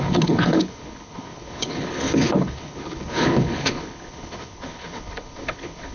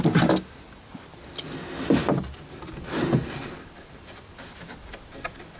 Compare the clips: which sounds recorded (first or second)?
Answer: second